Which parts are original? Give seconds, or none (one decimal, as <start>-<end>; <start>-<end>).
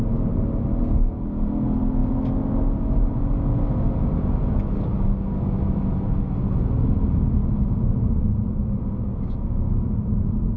0.0-10.6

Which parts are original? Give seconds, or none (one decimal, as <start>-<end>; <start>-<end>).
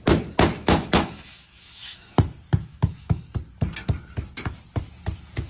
0.0-0.6; 2.1-2.6; 3.2-5.5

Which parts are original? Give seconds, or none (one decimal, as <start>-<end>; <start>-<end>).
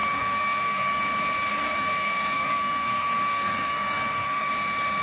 1.0-1.5; 4.5-5.0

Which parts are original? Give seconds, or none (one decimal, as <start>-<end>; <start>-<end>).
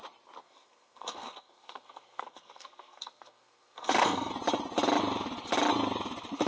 0.0-0.4; 4.3-6.5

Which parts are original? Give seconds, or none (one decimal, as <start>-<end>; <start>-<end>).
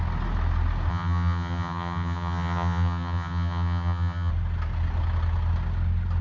0.0-0.9; 4.3-6.2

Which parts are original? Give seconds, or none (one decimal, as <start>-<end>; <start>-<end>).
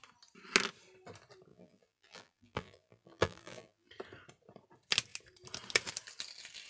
0.0-1.5; 3.9-6.7